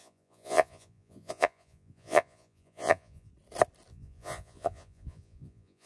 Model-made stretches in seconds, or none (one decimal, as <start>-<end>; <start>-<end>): 0.0-3.3; 3.9-5.9